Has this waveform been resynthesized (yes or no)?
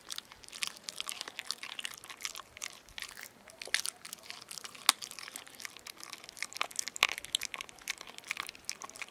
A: no